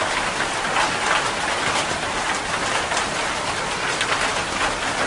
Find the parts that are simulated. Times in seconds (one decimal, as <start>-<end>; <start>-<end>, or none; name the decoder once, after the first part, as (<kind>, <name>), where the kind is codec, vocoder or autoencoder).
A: none